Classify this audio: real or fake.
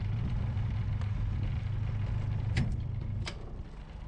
real